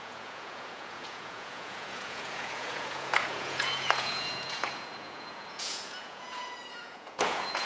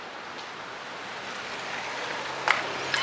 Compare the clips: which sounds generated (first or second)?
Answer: first